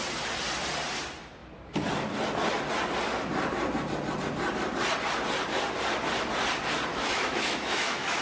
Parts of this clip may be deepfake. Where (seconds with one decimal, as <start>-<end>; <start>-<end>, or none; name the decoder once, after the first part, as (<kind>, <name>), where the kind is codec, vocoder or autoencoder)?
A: 6.9-8.2 (autoencoder, DAC-VAE)